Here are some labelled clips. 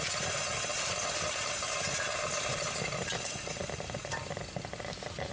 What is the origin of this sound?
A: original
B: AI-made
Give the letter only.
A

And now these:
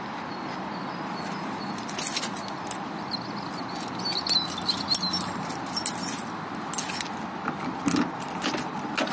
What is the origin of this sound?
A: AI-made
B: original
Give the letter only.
B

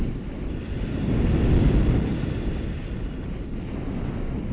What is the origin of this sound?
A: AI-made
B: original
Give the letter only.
B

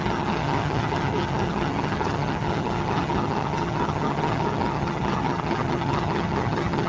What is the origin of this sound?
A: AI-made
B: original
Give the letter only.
A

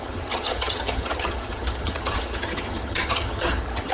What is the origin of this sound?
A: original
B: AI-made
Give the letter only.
B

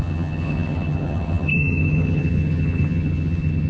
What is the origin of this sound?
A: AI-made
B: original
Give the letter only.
A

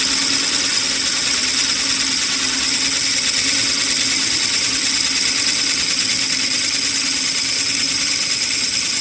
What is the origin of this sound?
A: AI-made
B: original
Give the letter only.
B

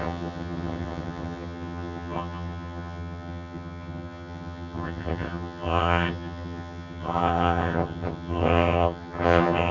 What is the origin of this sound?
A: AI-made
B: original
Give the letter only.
A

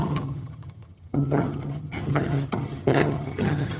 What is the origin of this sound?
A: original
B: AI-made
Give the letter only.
B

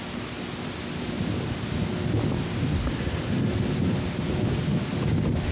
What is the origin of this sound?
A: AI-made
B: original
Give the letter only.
B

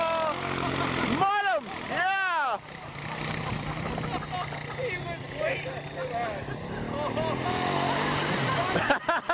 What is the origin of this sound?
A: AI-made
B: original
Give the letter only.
B